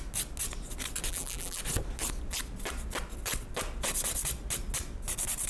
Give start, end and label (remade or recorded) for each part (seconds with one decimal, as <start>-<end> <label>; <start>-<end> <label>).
0.0-1.1 recorded; 1.1-1.6 remade; 1.6-5.5 recorded